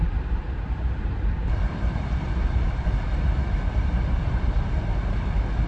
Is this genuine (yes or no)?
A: no